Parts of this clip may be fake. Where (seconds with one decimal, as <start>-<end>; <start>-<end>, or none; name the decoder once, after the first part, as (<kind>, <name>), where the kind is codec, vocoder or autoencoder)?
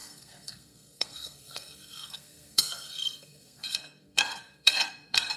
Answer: 0.0-5.4 (codec, SNAC)